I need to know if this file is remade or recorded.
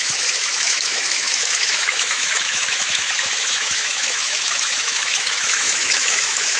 remade